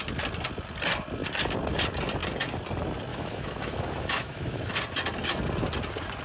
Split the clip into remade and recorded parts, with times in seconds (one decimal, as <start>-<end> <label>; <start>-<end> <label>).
0.0-3.1 recorded; 3.1-4.7 remade; 4.7-6.2 recorded